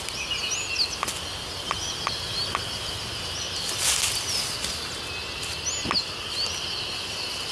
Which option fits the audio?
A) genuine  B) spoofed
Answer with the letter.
A